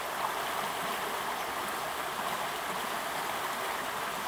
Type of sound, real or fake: real